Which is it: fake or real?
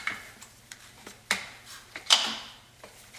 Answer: fake